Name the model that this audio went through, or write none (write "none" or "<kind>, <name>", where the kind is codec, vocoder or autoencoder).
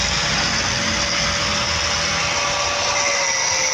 none